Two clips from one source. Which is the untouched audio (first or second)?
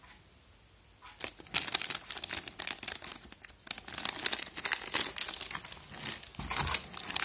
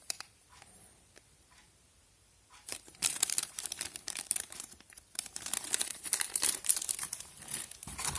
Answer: first